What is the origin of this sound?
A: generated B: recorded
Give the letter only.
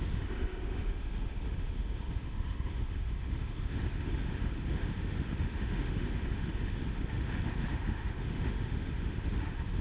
A